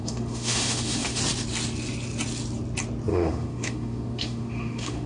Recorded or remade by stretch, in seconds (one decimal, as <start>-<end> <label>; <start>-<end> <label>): 0.0-1.2 remade; 1.2-3.1 recorded; 3.1-5.1 remade